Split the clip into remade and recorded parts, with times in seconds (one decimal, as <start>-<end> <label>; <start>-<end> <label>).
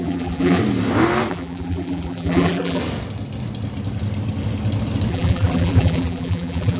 0.0-0.6 remade; 0.6-1.3 recorded; 1.3-2.8 remade; 2.8-5.1 recorded; 5.1-6.8 remade